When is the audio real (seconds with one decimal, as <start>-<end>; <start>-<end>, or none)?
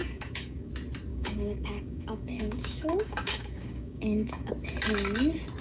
0.7-1.1; 4.5-5.6